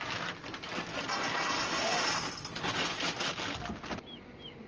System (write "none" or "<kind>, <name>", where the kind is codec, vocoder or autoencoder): none